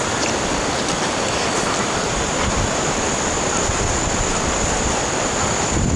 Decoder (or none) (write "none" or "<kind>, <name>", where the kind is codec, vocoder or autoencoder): none